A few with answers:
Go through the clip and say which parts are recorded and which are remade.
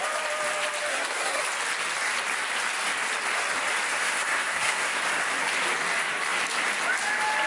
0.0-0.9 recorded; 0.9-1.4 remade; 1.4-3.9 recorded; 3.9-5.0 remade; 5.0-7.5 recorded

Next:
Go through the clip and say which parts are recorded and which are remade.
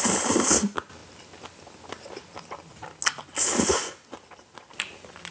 0.0-5.3 recorded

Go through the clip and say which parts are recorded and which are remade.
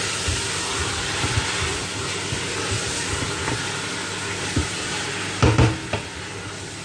0.0-6.8 recorded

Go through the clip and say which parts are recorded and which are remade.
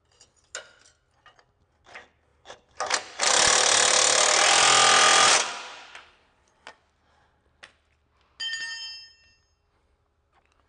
0.0-10.7 recorded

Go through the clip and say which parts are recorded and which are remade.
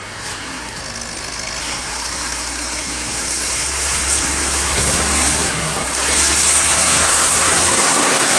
0.0-0.8 remade; 0.8-1.6 recorded; 1.6-8.4 remade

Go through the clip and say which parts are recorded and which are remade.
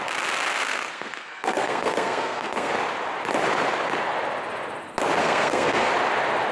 0.0-0.7 recorded; 0.7-2.7 remade; 2.7-5.2 recorded; 5.2-5.9 remade; 5.9-6.5 recorded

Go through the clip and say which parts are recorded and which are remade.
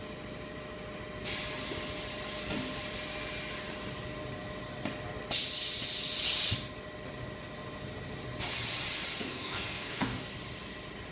0.0-9.3 recorded; 9.3-10.2 remade; 10.2-11.1 recorded